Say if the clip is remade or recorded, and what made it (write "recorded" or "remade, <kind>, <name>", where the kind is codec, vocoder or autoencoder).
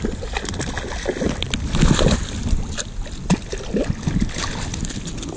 recorded